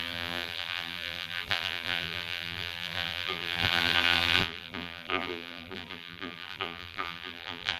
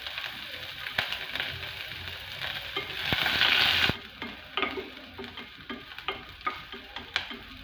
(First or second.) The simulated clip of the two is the first